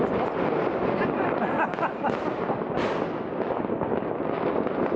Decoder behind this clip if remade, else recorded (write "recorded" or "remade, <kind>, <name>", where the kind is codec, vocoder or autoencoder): recorded